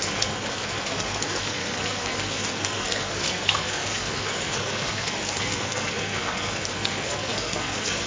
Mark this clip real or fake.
fake